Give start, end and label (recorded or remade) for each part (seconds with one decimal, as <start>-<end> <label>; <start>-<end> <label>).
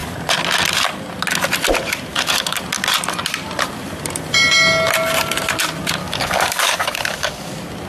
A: 0.0-2.1 recorded; 2.1-2.6 remade; 2.6-6.0 recorded; 6.0-7.5 remade; 7.5-7.9 recorded